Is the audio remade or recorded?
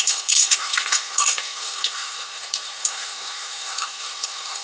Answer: remade